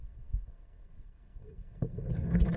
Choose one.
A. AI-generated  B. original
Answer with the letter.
A